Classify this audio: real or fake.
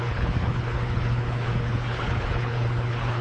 fake